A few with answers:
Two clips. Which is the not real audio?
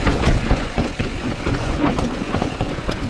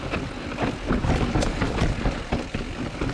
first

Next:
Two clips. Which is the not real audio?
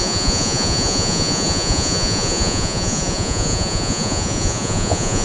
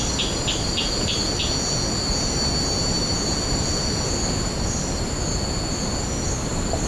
first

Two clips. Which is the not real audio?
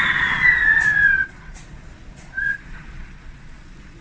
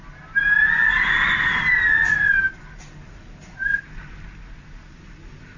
first